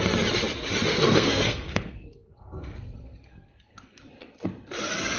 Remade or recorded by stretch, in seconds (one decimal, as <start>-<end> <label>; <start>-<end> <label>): 0.0-0.9 recorded; 0.9-4.0 remade; 4.0-5.2 recorded